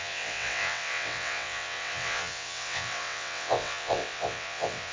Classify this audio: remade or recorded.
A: remade